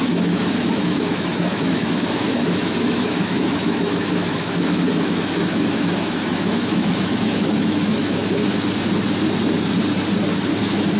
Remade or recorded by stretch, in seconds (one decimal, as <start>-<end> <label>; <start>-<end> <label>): 0.0-8.4 remade; 8.4-10.6 recorded; 10.6-11.0 remade